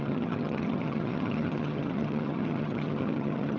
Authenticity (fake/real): fake